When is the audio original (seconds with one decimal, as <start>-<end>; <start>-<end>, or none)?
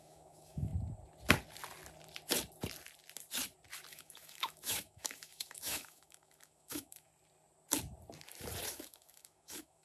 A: 0.7-3.9; 7.1-8.7